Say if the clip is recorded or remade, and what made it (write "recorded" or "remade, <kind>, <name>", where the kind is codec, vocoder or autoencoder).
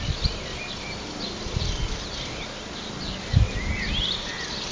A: recorded